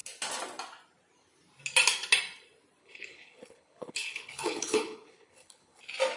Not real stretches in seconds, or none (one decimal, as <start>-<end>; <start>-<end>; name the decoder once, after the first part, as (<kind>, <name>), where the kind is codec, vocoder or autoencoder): 2.8-5.8 (codec, HILCodec)